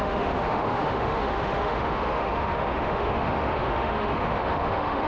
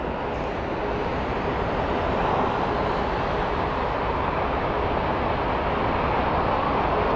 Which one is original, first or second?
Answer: second